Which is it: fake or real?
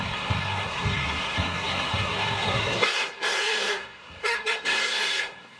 fake